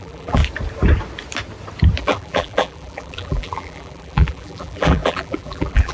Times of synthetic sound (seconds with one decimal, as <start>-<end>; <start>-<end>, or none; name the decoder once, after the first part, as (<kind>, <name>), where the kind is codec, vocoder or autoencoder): 0.0-0.4 (vocoder, BigVGAN v2); 2.0-5.9